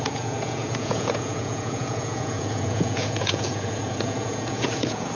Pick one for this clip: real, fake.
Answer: fake